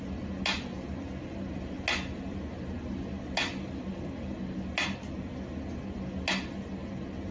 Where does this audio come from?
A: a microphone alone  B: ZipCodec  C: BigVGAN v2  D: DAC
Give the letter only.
A